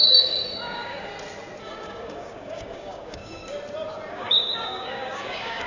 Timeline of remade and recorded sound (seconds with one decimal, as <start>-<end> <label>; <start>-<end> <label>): 0.0-1.1 remade; 1.1-1.6 recorded; 1.6-3.4 remade; 3.4-4.1 recorded; 4.1-5.7 remade